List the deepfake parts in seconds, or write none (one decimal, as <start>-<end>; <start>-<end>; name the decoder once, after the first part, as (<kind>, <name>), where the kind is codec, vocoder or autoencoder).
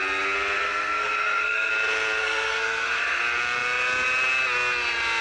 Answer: 0.6-1.7 (codec, SNAC); 2.2-3.2